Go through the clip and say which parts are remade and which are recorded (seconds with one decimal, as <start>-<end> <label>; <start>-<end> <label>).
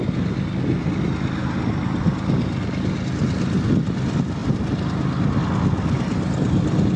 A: 0.0-7.0 recorded